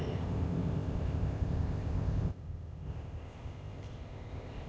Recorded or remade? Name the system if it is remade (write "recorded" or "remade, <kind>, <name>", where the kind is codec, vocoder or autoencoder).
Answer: remade, codec, ZipCodec